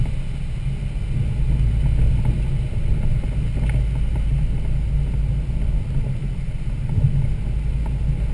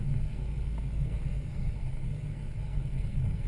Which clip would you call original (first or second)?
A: first